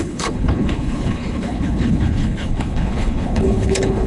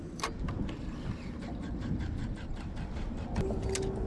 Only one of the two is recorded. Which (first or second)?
second